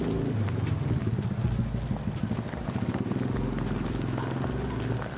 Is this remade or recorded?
recorded